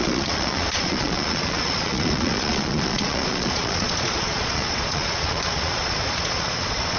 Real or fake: fake